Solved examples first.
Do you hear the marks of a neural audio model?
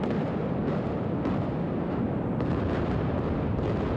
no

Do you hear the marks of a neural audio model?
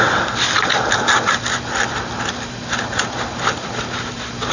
no